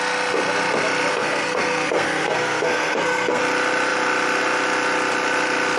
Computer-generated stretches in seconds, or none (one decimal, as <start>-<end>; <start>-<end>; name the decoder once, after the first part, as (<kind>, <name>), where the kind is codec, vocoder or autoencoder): 1.1-3.4 (codec, SNAC)